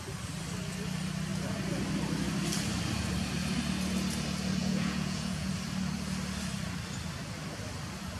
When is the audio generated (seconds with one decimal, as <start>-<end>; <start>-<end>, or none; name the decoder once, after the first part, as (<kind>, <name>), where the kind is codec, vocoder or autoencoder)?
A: 4.6-5.5 (vocoder, Vocos)